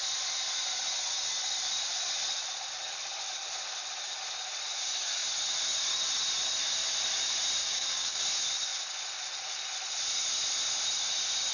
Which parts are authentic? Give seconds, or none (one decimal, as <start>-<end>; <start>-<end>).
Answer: 0.0-7.6; 8.2-11.5

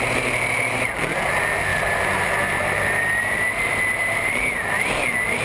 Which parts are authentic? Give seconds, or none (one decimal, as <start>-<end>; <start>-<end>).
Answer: 0.0-1.7; 4.9-5.4

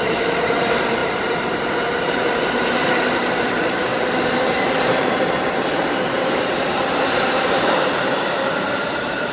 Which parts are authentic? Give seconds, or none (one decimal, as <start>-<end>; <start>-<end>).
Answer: 1.0-2.0

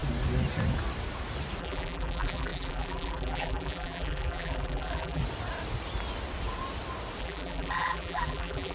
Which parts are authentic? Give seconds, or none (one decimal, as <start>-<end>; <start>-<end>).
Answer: 0.0-1.6; 5.2-7.2

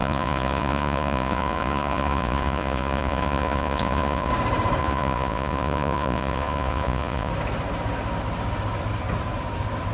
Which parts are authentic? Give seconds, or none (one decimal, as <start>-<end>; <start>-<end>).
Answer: 4.3-4.8; 7.3-9.9